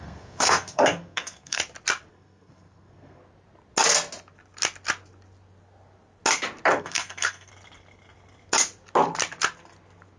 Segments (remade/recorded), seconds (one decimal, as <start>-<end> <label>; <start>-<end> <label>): 0.0-1.6 remade; 1.6-2.1 recorded; 2.1-3.2 remade; 3.2-6.8 recorded; 6.8-7.5 remade; 7.5-10.2 recorded